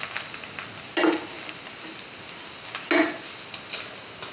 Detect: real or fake real